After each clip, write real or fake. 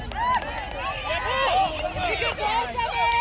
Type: real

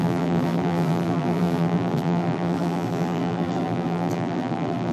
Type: fake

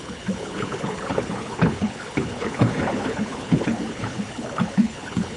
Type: fake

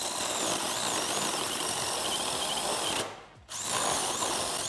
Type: real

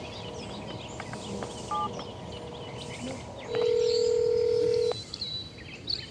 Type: real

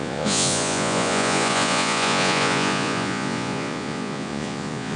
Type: fake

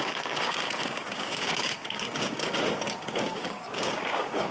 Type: fake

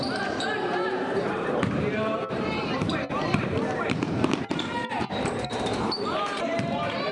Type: fake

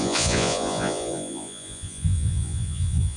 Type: fake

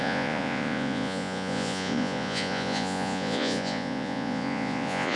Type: fake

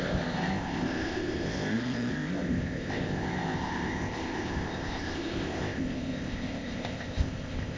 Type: fake